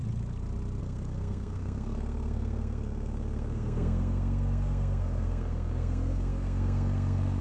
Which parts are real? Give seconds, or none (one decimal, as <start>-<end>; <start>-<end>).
0.0-0.8